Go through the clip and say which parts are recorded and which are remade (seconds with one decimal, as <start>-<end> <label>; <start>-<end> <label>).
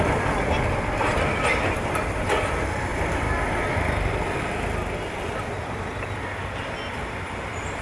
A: 0.0-7.8 recorded